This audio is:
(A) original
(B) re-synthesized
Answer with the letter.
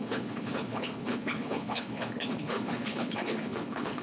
B